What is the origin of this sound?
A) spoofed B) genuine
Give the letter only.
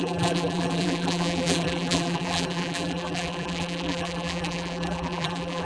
A